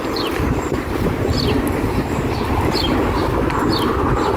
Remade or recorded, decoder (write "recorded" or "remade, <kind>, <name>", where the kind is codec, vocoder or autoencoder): remade, vocoder, BigVGAN v2